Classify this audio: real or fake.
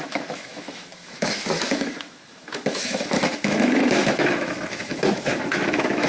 fake